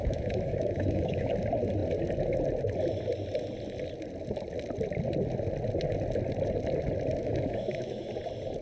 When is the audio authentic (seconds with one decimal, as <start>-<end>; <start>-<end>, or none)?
1.3-7.2; 8.1-8.6